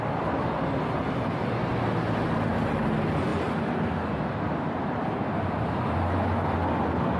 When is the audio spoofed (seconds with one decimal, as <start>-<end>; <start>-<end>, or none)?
none